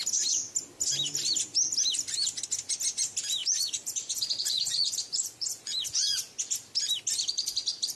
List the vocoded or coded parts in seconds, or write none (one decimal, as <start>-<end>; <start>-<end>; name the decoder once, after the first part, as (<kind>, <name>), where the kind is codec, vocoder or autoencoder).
3.4-6.5 (vocoder, Vocos)

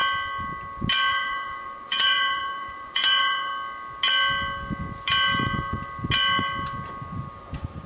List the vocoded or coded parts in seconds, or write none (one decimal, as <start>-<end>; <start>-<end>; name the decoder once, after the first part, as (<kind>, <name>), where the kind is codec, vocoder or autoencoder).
1.1-3.5 (vocoder, Vocos); 7.4-7.9

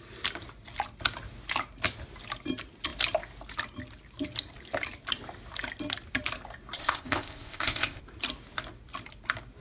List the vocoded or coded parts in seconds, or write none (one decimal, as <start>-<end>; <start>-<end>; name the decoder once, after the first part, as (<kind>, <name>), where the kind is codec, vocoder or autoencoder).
6.8-8.0 (codec, ZipCodec)